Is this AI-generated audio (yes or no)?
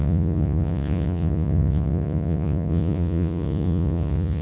yes